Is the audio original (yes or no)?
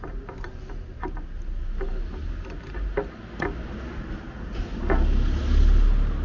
yes